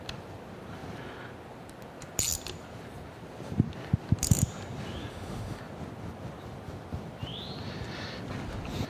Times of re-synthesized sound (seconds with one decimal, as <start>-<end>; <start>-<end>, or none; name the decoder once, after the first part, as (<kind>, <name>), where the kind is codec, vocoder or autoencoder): 5.1-5.6 (autoencoder, DAC-VAE)